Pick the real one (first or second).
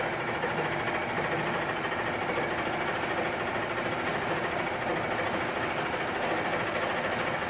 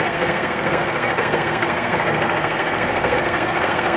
first